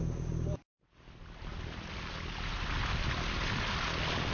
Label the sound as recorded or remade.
recorded